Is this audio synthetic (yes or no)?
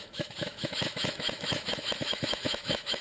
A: yes